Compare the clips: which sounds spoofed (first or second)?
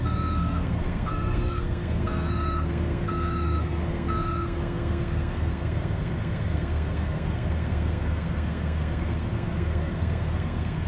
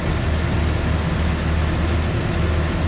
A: first